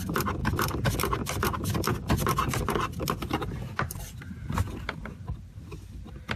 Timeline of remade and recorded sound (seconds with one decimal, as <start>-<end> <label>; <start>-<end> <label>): 0.0-0.4 recorded; 0.4-4.2 remade; 4.2-6.4 recorded